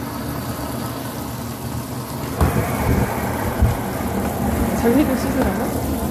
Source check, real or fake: real